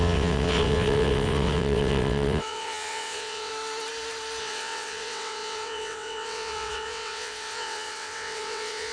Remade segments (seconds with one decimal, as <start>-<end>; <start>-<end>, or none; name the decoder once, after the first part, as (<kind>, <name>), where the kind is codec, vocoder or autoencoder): 0.0-3.5 (vocoder, WaveNeXt); 4.4-8.9